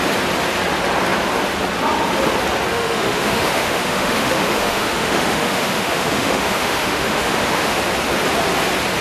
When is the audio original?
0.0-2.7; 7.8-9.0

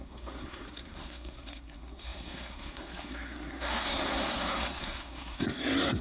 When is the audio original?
none

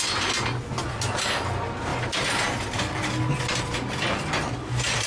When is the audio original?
0.0-5.1